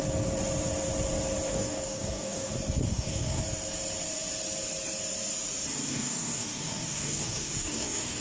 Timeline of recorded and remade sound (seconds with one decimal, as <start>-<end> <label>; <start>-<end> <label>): 0.0-1.5 recorded; 1.5-2.5 remade; 2.5-2.9 recorded; 2.9-3.4 remade; 3.4-5.9 recorded; 5.9-8.2 remade